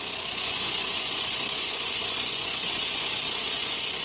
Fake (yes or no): yes